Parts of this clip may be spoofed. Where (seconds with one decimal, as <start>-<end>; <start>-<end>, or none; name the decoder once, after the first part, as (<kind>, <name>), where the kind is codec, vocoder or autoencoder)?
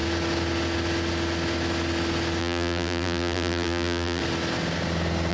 2.4-4.2 (vocoder, BigVGAN v2)